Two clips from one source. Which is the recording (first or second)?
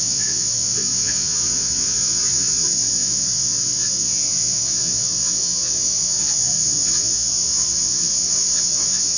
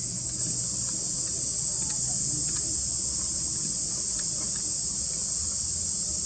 second